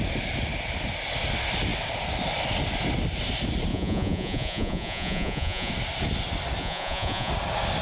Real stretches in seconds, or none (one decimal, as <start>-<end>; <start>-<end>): 0.0-3.7; 5.7-6.6; 7.3-7.8